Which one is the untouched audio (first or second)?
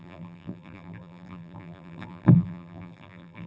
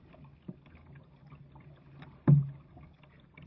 second